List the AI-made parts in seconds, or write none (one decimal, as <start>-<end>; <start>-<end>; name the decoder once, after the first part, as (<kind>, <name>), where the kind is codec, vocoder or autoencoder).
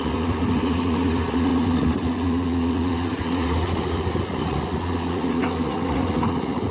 0.0-6.7 (vocoder, Vocos)